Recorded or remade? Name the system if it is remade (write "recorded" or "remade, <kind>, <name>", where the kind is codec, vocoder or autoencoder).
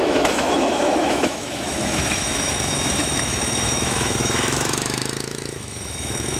remade, autoencoder, DAC-VAE